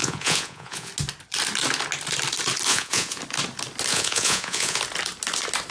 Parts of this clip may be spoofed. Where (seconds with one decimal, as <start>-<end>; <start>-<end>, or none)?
0.0-0.9; 2.7-3.2; 3.9-4.8